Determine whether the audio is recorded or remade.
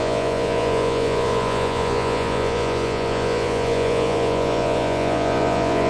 remade